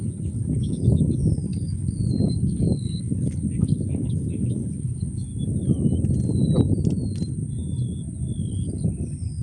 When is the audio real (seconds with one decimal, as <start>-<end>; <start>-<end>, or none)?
5.3-8.5

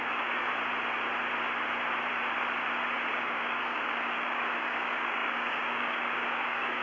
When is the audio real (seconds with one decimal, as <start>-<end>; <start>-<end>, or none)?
0.5-3.1

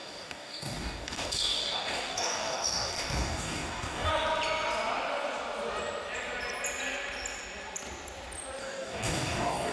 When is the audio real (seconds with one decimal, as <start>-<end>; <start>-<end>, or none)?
4.1-8.6